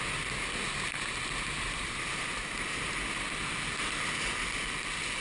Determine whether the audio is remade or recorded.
recorded